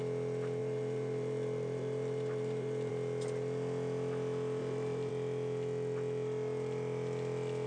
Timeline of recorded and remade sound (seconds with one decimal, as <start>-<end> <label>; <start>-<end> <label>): 0.0-0.6 recorded; 0.6-2.9 remade; 2.9-4.6 recorded; 4.6-5.1 remade; 5.1-7.7 recorded